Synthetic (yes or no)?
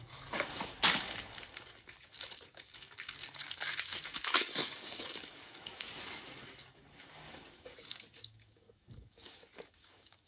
yes